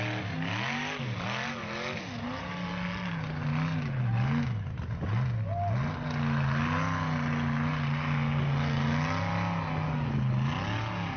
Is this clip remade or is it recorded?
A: recorded